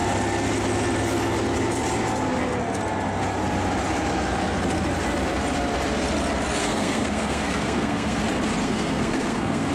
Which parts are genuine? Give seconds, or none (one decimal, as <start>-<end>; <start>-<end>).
0.0-6.6; 8.2-8.6